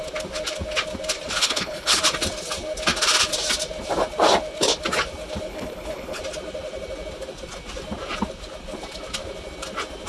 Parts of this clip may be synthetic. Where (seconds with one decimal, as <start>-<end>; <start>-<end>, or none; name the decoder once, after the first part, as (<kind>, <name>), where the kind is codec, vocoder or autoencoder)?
1.4-2.0 (codec, HILCodec); 5.5-6.2